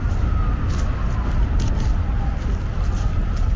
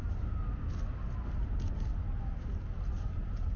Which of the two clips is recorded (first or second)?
second